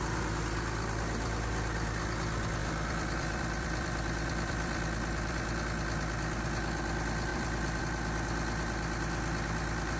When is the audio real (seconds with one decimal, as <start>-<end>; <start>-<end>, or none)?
0.0-2.6; 5.6-7.3; 7.8-10.0